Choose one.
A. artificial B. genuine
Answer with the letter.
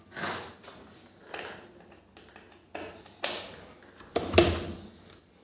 B